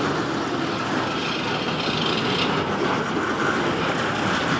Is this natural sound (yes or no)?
yes